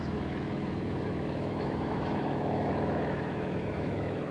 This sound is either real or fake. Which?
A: fake